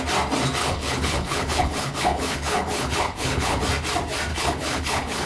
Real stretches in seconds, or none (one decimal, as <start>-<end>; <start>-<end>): 0.0-0.6; 3.6-4.3